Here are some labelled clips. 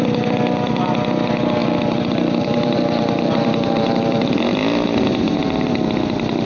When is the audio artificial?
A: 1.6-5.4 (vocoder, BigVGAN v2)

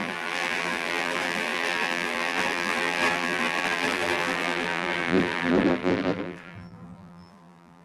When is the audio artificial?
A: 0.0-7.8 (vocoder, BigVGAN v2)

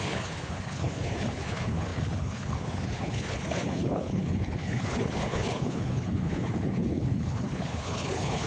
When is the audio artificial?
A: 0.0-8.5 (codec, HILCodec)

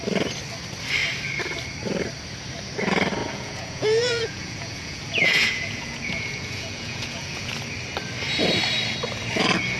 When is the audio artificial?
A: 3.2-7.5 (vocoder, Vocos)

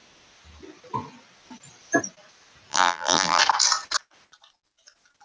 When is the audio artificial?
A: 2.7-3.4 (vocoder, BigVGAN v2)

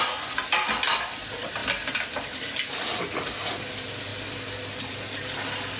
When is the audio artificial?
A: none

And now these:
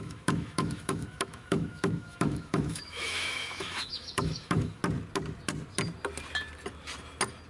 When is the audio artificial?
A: 0.0-4.8 (autoencoder, DAC-VAE)

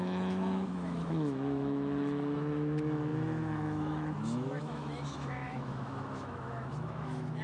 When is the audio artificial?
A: 0.0-7.4 (autoencoder, DAC-VAE)